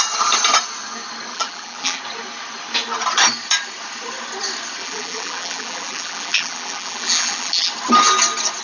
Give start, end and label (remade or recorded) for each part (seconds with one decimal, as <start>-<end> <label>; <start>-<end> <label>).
0.0-1.3 recorded; 1.3-2.0 remade; 2.0-4.8 recorded; 4.8-7.7 remade; 7.7-8.6 recorded